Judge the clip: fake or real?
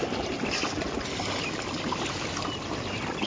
real